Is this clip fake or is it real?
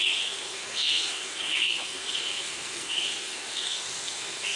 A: fake